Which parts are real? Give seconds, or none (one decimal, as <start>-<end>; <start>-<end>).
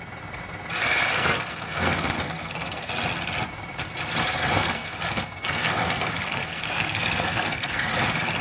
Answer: 0.0-0.8; 2.9-4.6; 7.8-8.4